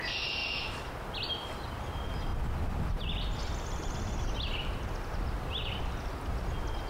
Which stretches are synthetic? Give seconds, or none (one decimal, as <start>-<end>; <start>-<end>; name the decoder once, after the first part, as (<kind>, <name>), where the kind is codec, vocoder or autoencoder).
none